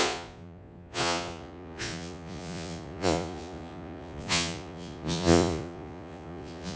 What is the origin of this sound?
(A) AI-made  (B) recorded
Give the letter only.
A